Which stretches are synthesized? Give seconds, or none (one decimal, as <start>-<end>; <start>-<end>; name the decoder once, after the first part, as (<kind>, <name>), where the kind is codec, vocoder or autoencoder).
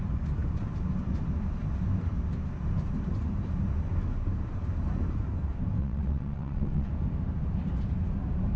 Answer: 5.8-6.9 (vocoder, WaveNeXt)